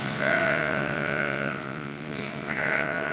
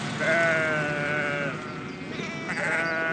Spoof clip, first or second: first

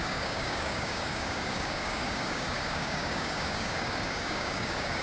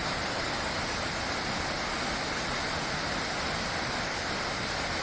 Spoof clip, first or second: first